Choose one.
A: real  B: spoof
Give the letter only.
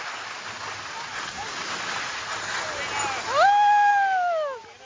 A